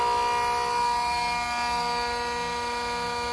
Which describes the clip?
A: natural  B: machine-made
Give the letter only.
A